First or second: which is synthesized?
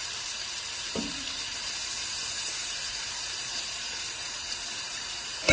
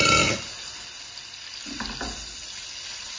first